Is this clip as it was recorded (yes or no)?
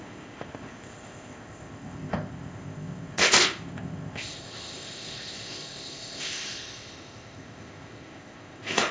no